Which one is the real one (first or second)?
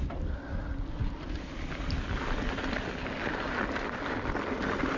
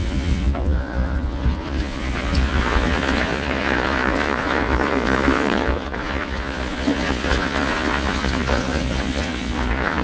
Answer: first